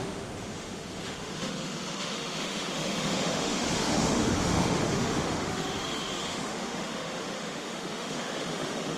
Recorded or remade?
remade